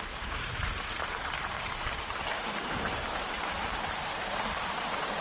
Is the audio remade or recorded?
remade